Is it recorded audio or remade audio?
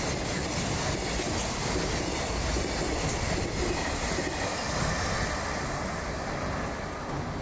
recorded